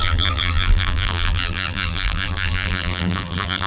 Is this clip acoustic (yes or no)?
no